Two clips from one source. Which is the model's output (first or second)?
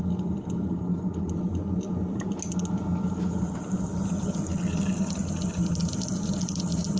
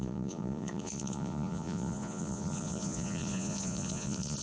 second